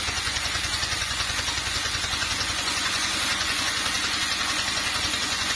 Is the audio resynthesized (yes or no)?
yes